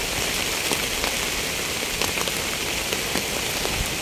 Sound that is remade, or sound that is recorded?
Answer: recorded